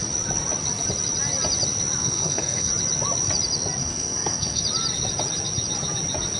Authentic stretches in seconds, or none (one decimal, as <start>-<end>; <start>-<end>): 0.0-2.0; 2.7-3.8; 4.6-6.4